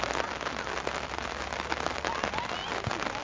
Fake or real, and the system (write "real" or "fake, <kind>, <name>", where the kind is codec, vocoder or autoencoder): real